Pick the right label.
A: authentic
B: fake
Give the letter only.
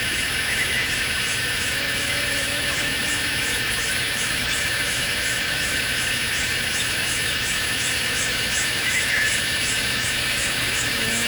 B